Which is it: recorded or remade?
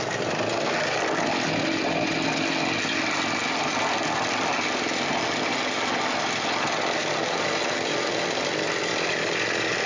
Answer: recorded